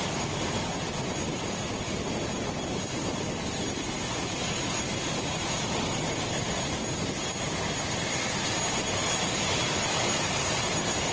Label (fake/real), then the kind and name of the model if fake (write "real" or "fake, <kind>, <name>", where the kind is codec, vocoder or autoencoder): real